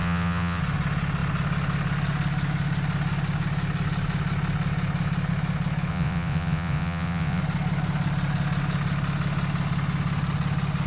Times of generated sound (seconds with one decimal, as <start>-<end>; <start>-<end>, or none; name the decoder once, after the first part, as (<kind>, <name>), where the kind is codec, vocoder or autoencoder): 0.0-0.6 (vocoder, WaveNeXt); 5.9-7.4